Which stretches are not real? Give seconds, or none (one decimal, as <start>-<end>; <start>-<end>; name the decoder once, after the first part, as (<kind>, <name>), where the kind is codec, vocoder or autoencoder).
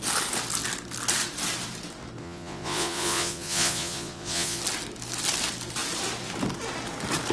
2.2-4.6 (vocoder, Vocos)